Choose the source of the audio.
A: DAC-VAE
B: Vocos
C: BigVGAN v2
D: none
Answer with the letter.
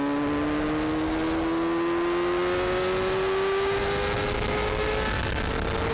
D